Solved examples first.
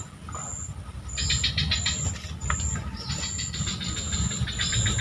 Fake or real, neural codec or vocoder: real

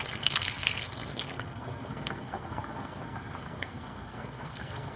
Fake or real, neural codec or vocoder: fake, codec, SNAC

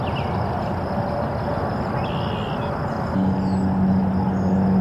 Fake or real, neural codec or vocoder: real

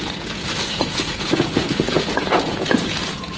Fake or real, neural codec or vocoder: fake, vocoder, Vocos